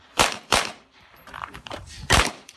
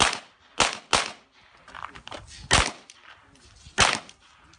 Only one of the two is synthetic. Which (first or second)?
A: first